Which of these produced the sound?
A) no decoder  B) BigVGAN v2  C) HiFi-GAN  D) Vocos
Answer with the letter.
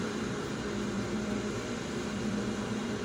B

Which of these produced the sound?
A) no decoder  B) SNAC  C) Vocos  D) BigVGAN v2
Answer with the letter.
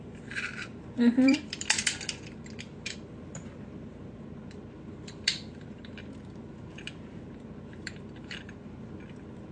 D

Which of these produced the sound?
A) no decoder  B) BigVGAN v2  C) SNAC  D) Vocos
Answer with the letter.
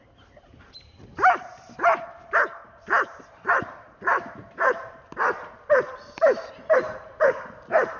B